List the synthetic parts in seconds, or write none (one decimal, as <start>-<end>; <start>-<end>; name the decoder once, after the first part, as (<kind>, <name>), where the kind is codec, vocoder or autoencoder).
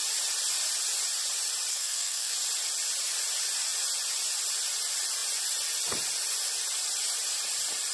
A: 1.7-2.3 (codec, SNAC)